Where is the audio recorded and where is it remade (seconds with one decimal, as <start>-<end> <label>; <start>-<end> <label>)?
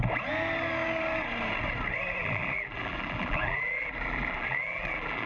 0.0-2.2 recorded; 2.2-5.3 remade